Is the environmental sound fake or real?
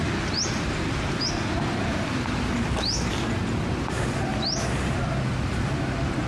real